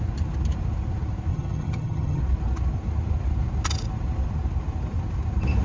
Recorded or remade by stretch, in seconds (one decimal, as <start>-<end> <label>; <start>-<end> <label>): 0.0-1.3 recorded; 1.3-2.2 remade; 2.2-5.6 recorded